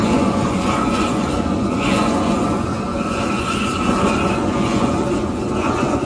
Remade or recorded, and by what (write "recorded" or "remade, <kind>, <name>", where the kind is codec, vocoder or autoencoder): remade, vocoder, Vocos